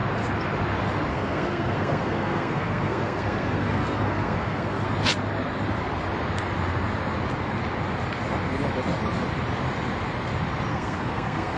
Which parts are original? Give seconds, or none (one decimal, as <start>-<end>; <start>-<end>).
0.0-1.1; 4.9-10.7

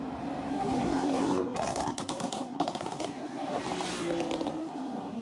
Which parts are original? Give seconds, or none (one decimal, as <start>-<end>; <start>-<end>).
0.0-0.5; 3.6-4.6

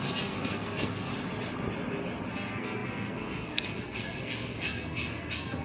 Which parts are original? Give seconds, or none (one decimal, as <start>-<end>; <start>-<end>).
1.1-2.3

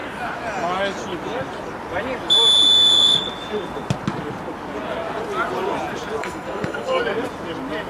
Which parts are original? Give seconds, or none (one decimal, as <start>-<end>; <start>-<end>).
0.0-6.2; 7.0-7.9